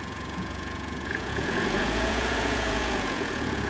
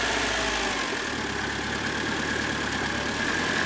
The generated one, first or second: first